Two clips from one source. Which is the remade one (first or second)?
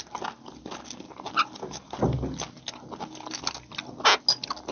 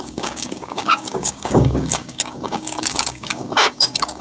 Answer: second